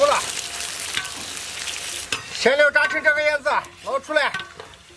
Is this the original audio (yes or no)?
yes